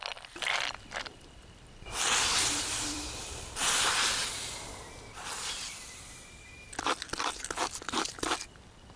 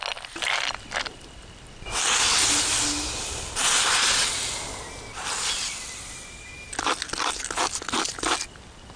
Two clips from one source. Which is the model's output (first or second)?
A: first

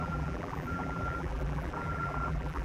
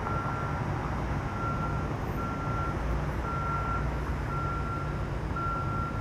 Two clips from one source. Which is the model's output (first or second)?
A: first